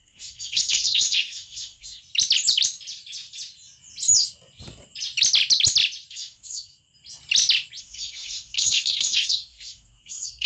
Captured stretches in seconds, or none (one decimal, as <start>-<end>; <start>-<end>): 2.0-6.1; 6.7-7.8